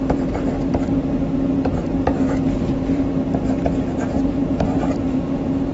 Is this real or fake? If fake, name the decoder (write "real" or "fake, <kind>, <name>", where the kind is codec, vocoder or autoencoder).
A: fake, vocoder, BigVGAN v2